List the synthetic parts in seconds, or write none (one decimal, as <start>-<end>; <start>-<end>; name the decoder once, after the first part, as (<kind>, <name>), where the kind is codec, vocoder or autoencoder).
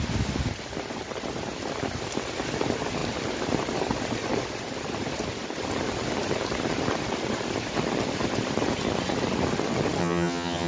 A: 10.0-10.7 (vocoder, HiFi-GAN)